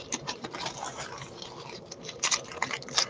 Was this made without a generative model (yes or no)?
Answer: no